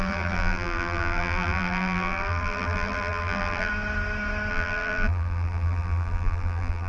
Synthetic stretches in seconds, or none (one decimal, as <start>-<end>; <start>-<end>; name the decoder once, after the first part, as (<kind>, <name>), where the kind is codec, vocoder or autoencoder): 0.0-3.7 (vocoder, BigVGAN v2); 4.5-6.9